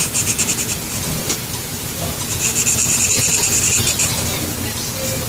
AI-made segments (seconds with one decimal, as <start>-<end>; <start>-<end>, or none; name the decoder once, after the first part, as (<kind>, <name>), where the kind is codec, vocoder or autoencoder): 0.0-0.5 (vocoder, BigVGAN v2); 1.7-2.2; 3.2-3.7